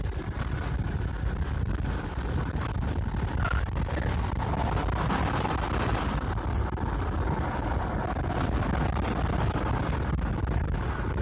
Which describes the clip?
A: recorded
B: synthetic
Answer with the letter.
A